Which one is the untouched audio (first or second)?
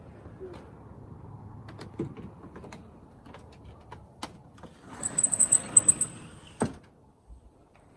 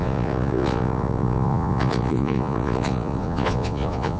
first